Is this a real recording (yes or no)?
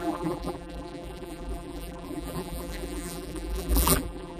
no